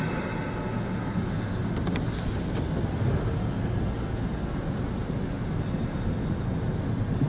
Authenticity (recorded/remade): recorded